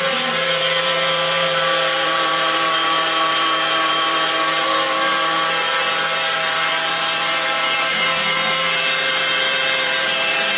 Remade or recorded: remade